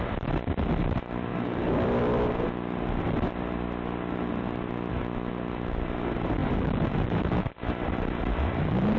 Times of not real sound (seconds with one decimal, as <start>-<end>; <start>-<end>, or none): none